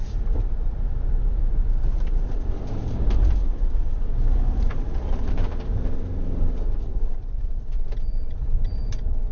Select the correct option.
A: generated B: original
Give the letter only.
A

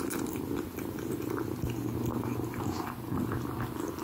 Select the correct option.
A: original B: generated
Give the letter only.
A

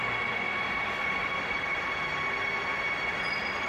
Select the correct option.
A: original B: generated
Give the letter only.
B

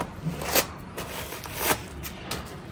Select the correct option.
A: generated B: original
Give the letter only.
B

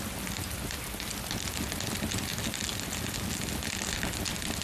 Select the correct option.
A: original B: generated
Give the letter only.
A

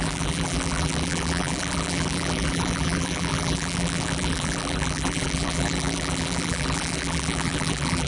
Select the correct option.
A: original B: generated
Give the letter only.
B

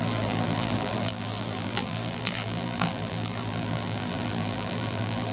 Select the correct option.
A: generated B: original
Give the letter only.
A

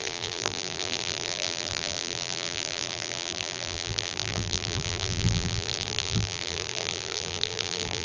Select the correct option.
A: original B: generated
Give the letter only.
B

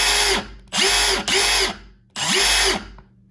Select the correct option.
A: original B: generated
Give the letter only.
A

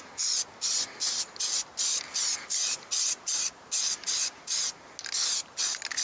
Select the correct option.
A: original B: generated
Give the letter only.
A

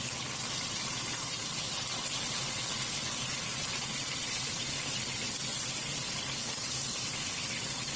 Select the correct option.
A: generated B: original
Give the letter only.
B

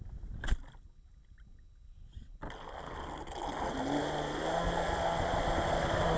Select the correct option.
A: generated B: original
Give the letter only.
B